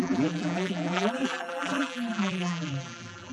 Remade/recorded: remade